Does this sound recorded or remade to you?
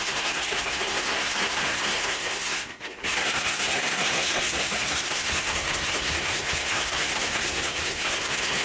remade